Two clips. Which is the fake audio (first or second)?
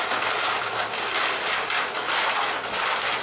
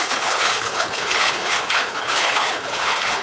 second